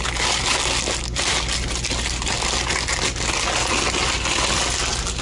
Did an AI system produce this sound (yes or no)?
no